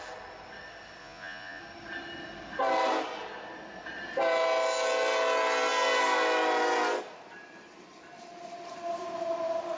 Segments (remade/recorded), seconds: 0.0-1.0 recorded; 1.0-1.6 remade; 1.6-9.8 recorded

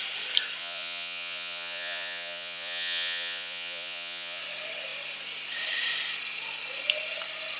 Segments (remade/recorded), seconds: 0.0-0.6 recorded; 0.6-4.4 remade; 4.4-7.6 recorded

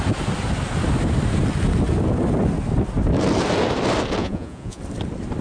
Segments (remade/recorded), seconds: 0.0-4.2 recorded; 4.2-4.8 remade; 4.8-5.4 recorded

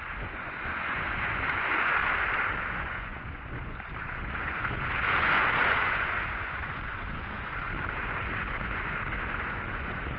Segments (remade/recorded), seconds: 0.0-2.0 remade; 2.0-2.7 recorded; 2.7-10.2 remade

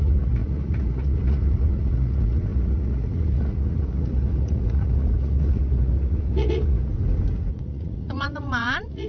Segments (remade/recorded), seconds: 0.0-6.9 remade; 6.9-7.5 recorded; 7.5-9.1 remade

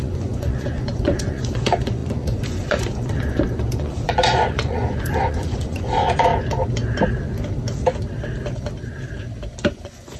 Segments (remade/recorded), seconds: 0.0-6.3 remade; 6.3-9.7 recorded; 9.7-10.2 remade